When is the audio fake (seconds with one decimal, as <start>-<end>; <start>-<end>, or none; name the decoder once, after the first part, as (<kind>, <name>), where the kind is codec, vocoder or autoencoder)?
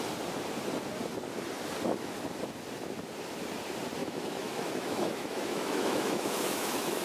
4.0-7.0 (autoencoder, DAC-VAE)